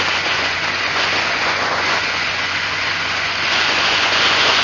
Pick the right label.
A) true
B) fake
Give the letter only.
B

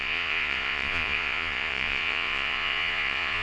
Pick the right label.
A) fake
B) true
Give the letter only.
A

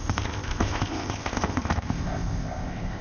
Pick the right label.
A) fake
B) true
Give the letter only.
A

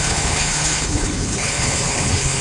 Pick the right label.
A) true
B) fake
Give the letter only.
B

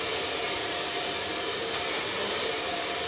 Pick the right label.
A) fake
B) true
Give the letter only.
A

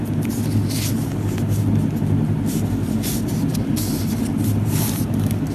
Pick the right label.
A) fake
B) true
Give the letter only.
B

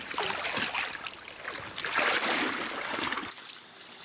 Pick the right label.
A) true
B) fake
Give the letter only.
A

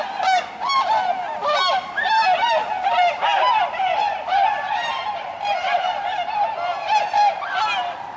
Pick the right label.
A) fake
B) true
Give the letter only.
B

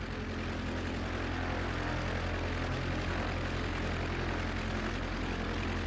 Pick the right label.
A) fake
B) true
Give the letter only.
B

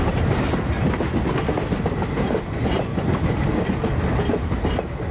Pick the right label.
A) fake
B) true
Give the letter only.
B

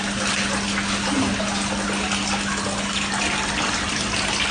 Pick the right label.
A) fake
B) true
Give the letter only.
B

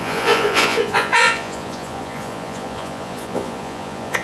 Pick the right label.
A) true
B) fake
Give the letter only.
B